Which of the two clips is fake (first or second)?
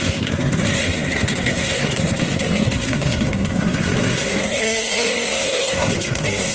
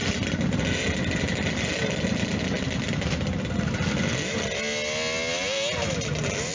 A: first